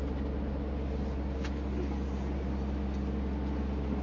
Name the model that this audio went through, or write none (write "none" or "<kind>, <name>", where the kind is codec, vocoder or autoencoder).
none